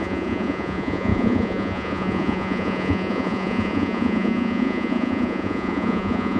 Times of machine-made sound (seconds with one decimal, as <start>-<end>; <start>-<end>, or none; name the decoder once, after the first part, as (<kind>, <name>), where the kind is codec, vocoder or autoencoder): 0.0-6.4 (vocoder, Vocos)